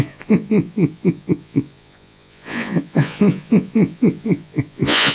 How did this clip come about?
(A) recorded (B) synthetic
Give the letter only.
B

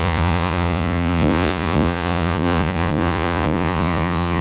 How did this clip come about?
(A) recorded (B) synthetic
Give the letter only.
B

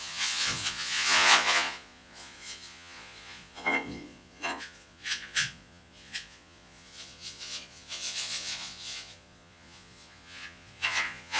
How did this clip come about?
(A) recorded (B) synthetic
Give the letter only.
B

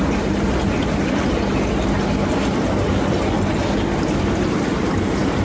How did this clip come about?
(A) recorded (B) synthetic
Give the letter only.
A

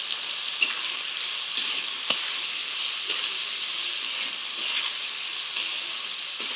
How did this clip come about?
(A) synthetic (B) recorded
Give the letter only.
B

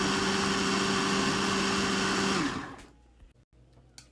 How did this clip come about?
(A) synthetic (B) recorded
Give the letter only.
B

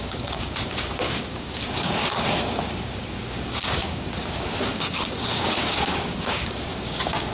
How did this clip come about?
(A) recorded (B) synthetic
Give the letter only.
B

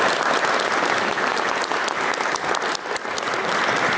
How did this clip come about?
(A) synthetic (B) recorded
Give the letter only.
B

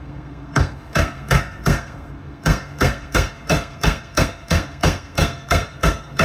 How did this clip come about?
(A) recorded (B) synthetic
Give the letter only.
B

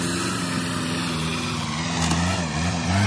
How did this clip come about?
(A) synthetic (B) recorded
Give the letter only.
B